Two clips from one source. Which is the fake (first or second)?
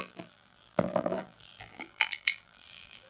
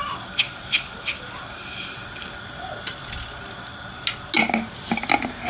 first